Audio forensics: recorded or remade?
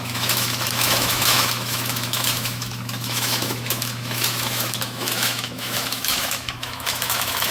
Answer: remade